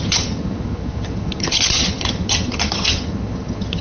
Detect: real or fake fake